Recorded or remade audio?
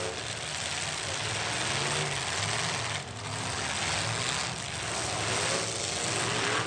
recorded